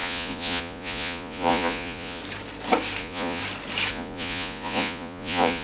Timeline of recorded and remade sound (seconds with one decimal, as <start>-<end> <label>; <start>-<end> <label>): 0.0-2.2 remade; 2.2-3.0 recorded; 3.0-3.4 remade; 3.4-3.9 recorded; 3.9-5.6 remade